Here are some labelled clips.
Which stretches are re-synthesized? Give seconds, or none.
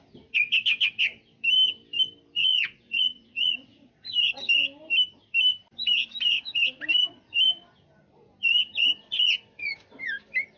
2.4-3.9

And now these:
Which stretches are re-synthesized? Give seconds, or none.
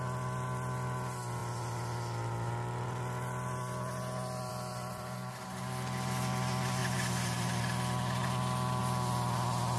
none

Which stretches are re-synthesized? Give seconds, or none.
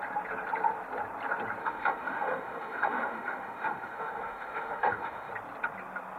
1.6-5.3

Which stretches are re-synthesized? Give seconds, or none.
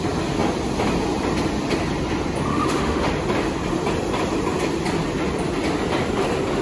2.5-3.1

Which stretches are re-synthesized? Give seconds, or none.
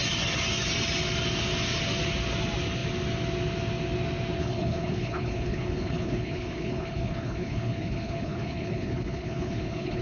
4.4-10.0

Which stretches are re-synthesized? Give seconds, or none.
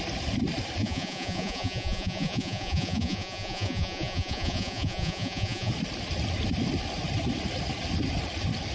0.8-5.7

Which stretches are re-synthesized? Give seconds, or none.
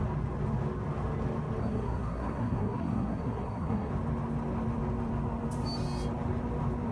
1.6-3.9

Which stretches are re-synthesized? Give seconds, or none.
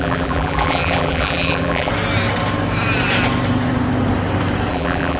0.0-1.9; 4.7-5.2